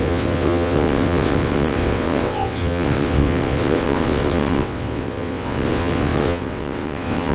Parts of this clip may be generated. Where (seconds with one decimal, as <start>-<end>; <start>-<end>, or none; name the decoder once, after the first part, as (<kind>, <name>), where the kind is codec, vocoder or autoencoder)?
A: 0.0-7.3 (vocoder, WaveNeXt)